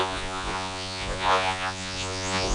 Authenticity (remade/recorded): remade